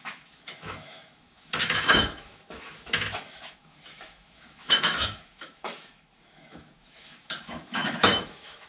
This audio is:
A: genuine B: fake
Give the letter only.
B